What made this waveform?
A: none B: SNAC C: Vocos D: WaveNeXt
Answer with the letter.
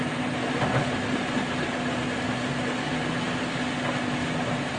A